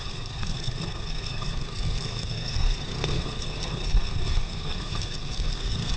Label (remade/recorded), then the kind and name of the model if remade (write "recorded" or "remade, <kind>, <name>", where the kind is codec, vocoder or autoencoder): remade, codec, SNAC